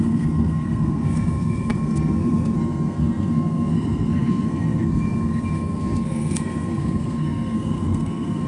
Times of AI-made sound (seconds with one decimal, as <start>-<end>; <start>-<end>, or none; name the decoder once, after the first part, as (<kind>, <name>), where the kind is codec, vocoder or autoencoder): 0.0-8.5 (codec, SNAC)